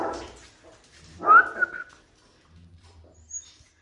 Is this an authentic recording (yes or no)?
yes